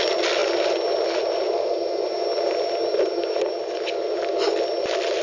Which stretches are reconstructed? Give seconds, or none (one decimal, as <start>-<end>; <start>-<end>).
none